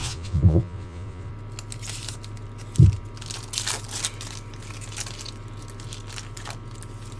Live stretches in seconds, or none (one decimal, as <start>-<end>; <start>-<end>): 1.3-7.2